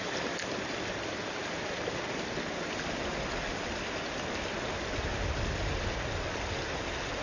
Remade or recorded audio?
recorded